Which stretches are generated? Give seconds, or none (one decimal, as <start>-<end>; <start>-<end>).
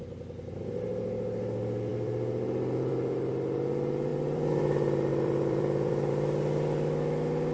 1.9-3.3; 4.1-4.6; 5.1-6.1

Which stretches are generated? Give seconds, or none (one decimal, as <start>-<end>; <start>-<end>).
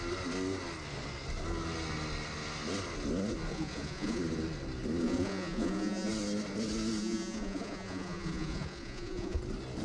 3.5-4.2; 5.0-6.1; 7.0-9.4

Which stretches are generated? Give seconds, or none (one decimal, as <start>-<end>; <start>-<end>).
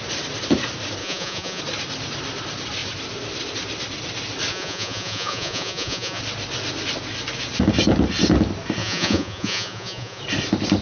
1.0-1.6; 4.5-6.2; 8.8-10.2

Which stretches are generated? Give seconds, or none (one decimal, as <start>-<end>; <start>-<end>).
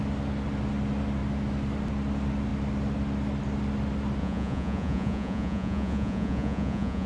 4.2-7.1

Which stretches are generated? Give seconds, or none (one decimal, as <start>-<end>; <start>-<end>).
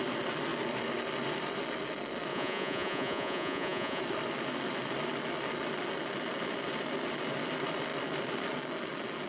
2.3-4.0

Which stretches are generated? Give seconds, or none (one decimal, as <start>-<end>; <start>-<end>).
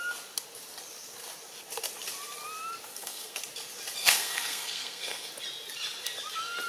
2.9-3.4; 4.0-5.3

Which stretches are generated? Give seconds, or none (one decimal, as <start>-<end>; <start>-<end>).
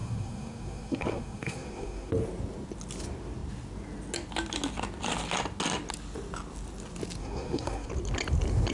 0.0-2.1; 7.2-7.9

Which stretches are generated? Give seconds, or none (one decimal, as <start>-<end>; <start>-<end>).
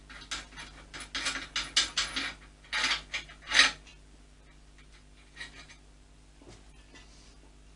none